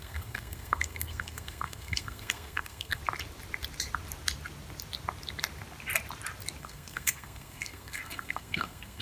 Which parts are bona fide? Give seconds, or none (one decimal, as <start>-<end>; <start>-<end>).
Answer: 3.0-6.6